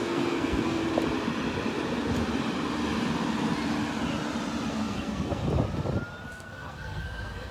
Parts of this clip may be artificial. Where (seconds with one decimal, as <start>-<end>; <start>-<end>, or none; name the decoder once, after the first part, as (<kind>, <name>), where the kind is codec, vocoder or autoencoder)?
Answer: 0.0-0.8 (codec, SNAC); 4.7-5.4; 6.3-7.5

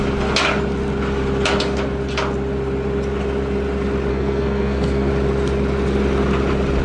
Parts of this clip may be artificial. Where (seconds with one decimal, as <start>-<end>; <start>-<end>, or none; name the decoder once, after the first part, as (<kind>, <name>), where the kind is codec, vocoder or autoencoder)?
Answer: 4.1-5.1 (codec, SNAC)

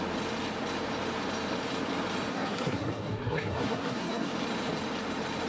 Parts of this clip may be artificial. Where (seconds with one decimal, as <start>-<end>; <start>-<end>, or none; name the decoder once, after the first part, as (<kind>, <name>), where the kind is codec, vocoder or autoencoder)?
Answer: 2.3-4.3 (codec, SNAC)

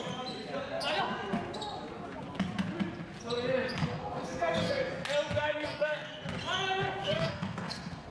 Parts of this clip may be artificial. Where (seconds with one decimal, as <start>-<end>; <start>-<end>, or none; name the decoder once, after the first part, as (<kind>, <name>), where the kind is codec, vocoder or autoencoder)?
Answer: 4.0-4.9 (codec, SNAC); 5.4-6.1; 7.0-8.1

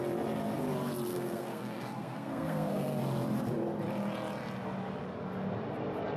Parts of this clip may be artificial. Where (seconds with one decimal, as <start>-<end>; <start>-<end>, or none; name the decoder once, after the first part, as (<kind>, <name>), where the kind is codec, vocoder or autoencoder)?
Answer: 1.1-3.0 (codec, SNAC)